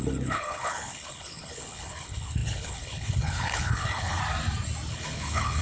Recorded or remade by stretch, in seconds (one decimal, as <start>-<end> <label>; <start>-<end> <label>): 0.0-4.2 remade; 4.2-4.9 recorded; 4.9-5.6 remade